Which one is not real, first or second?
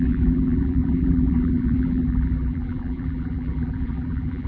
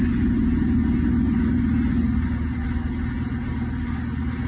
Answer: first